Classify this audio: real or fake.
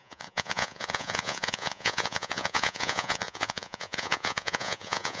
fake